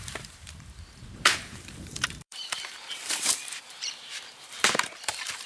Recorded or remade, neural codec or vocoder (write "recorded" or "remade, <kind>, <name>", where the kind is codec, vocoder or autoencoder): remade, vocoder, BigVGAN v2